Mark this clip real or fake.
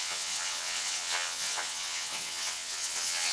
fake